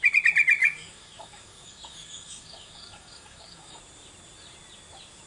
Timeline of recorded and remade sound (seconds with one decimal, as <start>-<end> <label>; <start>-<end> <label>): 0.0-0.6 recorded; 0.6-3.8 remade; 3.8-5.3 recorded

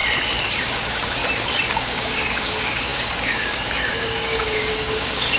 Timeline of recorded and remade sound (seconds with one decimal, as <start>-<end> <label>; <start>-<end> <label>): 0.0-0.5 recorded; 0.5-1.2 remade; 1.2-1.7 recorded; 1.7-5.4 remade

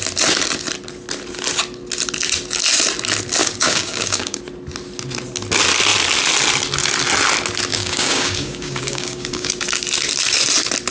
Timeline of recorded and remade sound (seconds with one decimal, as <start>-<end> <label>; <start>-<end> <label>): 0.0-3.4 recorded; 3.4-4.4 remade; 4.4-7.7 recorded; 7.7-9.5 remade; 9.5-10.9 recorded

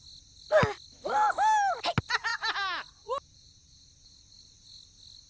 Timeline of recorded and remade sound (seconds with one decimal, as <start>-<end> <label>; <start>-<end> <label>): 0.0-5.3 recorded

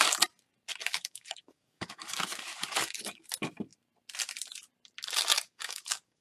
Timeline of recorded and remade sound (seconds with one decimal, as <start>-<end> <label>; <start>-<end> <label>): 0.0-0.7 recorded; 0.7-3.3 remade; 3.3-5.3 recorded; 5.3-6.2 remade

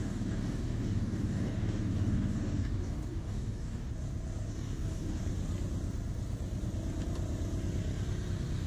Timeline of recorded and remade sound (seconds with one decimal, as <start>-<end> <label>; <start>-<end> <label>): 0.0-3.9 remade; 3.9-4.5 recorded; 4.5-5.2 remade; 5.2-8.7 recorded